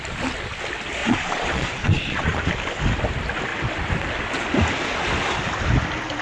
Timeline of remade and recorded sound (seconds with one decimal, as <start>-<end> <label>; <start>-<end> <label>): 0.0-1.0 recorded; 1.0-2.5 remade; 2.5-6.2 recorded